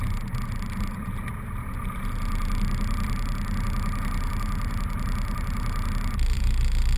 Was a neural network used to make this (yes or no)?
yes